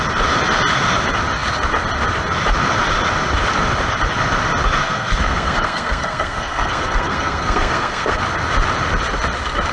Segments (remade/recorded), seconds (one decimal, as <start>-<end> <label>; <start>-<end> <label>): 0.0-4.8 recorded; 4.8-8.2 remade; 8.2-9.7 recorded